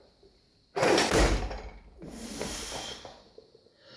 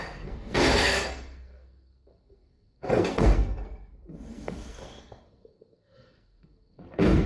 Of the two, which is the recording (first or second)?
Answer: first